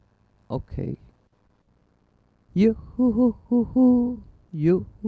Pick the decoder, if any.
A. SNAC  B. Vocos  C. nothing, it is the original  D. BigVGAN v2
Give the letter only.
C